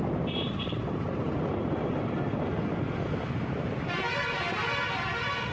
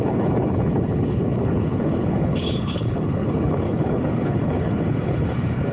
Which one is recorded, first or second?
first